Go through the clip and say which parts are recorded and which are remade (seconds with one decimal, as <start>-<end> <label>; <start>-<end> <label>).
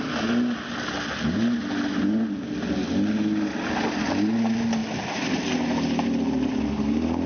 0.0-7.3 recorded